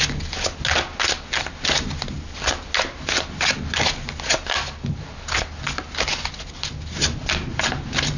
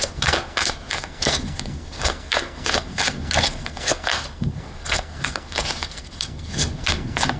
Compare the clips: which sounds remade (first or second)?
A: second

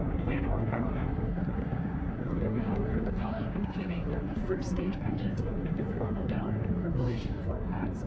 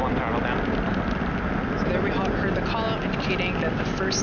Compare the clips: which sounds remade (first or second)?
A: first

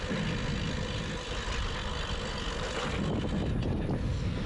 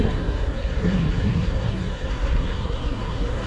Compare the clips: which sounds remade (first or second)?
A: second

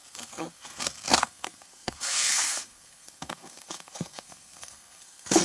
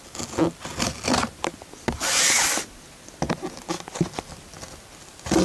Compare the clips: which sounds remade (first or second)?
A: first